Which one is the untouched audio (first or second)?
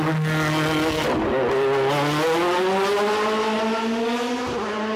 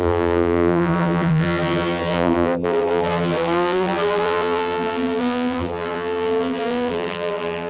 first